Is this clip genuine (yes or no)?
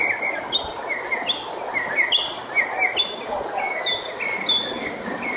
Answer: yes